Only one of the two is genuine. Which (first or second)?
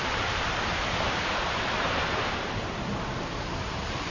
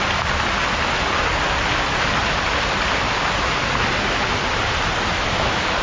second